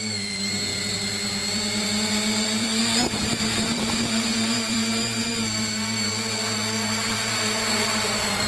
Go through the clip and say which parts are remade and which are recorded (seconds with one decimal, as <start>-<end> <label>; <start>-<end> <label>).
0.0-2.8 remade; 2.8-3.3 recorded; 3.3-6.4 remade; 6.4-7.1 recorded; 7.1-8.5 remade